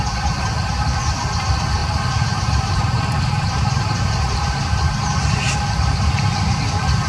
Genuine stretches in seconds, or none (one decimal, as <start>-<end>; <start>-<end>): 0.0-1.8; 6.1-7.1